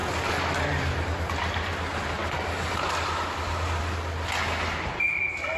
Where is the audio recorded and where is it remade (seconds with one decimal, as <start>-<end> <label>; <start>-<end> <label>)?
0.0-5.6 recorded